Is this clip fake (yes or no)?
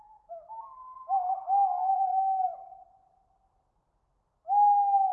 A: no